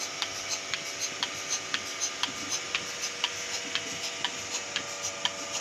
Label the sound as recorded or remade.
recorded